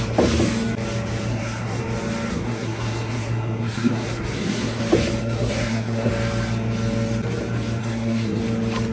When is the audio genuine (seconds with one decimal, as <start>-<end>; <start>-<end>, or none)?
0.0-1.3; 1.8-2.3; 4.8-5.2; 6.1-7.8; 8.4-8.9